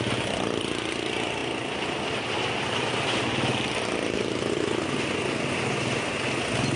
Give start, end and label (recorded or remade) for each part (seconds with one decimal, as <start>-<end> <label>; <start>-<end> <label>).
0.0-6.8 recorded